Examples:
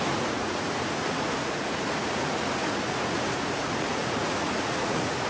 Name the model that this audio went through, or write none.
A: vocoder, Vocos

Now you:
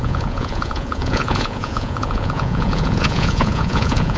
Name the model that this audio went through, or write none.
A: vocoder, Vocos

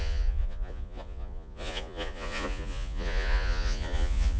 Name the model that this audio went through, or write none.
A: vocoder, Vocos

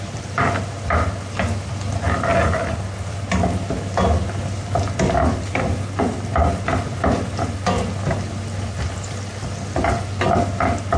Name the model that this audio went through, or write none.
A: none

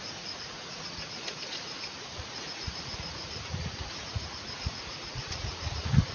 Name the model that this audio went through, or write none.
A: vocoder, Vocos